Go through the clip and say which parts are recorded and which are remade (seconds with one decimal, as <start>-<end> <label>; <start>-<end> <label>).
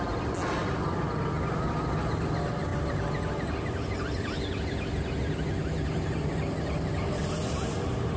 0.0-8.2 recorded